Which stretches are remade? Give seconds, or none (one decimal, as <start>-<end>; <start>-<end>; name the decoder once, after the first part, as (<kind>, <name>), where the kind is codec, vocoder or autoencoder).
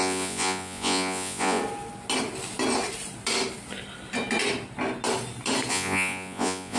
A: 0.0-1.6 (vocoder, Vocos); 5.7-6.8